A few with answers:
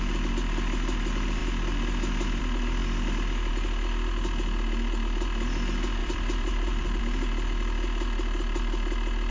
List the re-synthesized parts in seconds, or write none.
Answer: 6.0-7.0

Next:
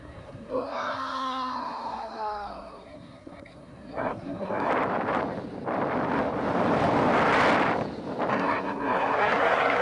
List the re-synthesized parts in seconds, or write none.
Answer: 0.0-4.7; 8.3-9.8

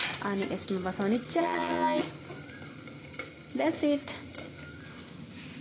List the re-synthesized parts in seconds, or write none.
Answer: 1.4-2.0

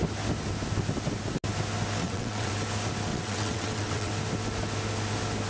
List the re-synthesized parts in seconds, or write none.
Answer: 2.0-2.5; 3.1-4.1

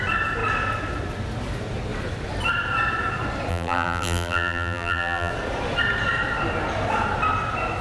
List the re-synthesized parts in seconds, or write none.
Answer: 3.5-5.3

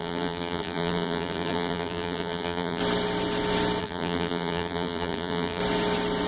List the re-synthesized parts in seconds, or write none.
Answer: 0.0-2.8; 3.8-5.6

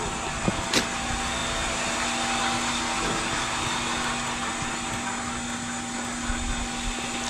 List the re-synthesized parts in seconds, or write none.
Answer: none